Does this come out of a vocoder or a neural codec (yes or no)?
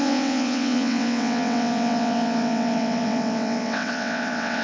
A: yes